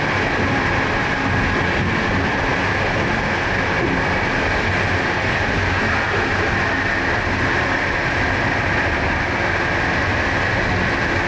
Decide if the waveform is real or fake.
real